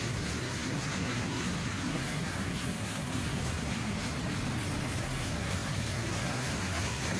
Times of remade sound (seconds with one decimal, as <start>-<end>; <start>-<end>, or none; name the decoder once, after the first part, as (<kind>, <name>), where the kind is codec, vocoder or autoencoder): 0.0-4.2 (codec, SNAC); 5.0-7.2